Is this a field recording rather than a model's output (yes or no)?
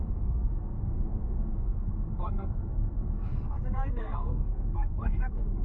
no